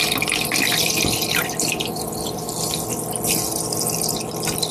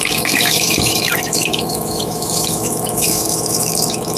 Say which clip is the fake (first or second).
second